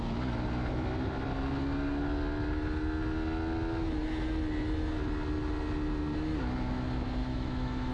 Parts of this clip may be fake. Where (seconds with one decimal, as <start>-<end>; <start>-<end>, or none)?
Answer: 7.2-7.9